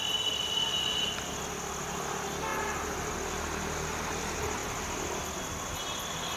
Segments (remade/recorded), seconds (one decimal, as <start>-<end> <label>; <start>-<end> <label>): 0.0-2.5 recorded; 2.5-3.1 remade; 3.1-4.6 recorded; 4.6-5.2 remade; 5.2-6.4 recorded